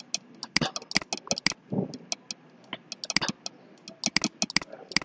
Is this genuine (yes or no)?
yes